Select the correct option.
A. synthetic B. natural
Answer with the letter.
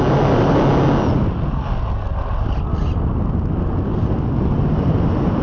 B